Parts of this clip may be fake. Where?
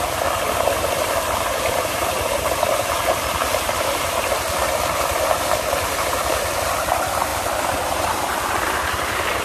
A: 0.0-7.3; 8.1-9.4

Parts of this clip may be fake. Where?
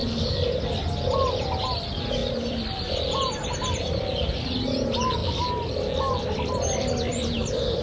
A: 2.2-2.9; 7.1-7.8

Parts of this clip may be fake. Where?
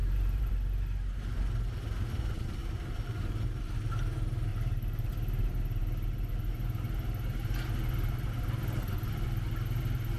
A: 0.0-0.5; 2.6-3.6; 4.5-5.1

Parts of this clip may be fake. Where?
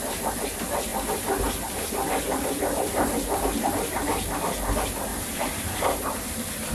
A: 5.1-6.7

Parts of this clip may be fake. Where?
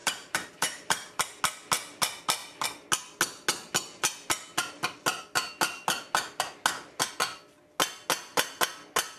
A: 0.0-1.4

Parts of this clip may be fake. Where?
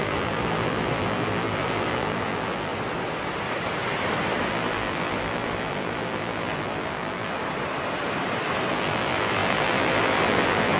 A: 0.0-2.7; 4.5-7.4; 8.7-10.8